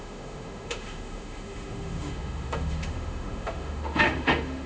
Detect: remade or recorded remade